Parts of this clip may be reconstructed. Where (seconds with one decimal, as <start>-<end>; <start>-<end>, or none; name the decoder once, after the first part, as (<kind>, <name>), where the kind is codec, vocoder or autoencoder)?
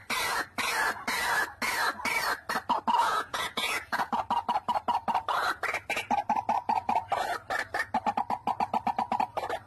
3.0-4.1 (vocoder, Vocos)